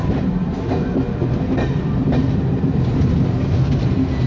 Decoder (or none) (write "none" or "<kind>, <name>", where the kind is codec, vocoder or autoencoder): none